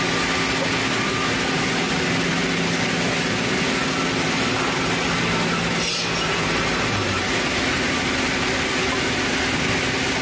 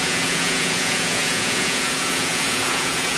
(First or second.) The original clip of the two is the first